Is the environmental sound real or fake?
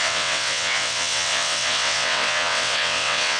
fake